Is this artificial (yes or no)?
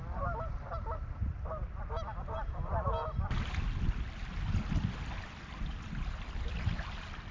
no